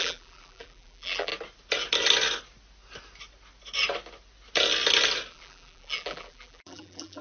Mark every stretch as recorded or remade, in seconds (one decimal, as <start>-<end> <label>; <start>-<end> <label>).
0.0-1.3 remade; 1.3-5.3 recorded; 5.3-7.2 remade